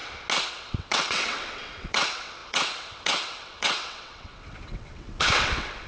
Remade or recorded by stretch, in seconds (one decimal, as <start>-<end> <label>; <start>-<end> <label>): 0.0-0.5 recorded; 0.5-5.9 remade